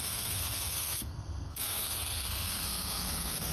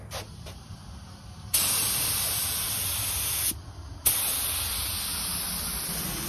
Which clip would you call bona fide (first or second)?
second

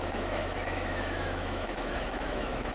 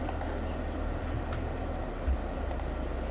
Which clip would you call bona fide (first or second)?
second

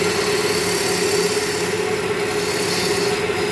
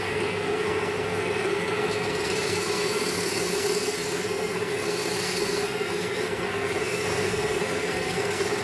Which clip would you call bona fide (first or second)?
first